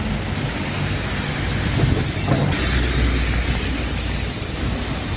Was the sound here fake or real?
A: real